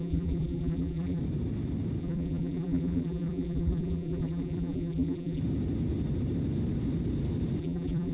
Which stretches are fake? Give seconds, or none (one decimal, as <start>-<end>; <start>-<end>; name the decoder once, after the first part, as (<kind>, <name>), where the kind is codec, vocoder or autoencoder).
0.0-1.2 (vocoder, BigVGAN v2); 2.0-5.4; 7.6-8.1